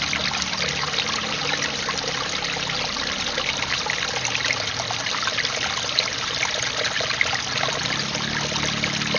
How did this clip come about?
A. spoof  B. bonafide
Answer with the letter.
B